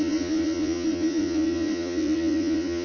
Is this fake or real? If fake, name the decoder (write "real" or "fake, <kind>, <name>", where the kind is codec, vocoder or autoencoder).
fake, vocoder, Vocos